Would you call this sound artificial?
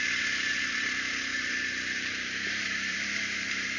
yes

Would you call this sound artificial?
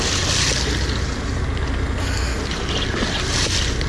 no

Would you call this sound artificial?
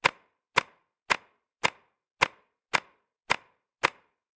no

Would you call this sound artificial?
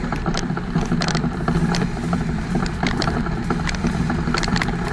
yes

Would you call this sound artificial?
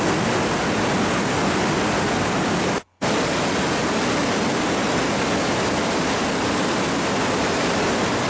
no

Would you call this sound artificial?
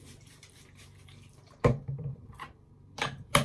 yes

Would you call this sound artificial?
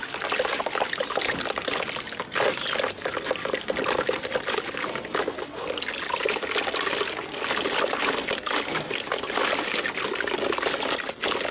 no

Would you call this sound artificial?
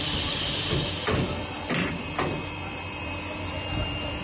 yes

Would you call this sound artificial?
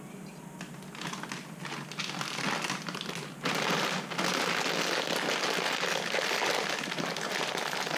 no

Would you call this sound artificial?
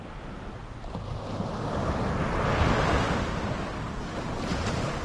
no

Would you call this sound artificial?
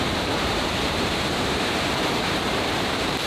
yes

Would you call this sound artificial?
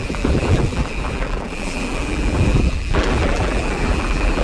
yes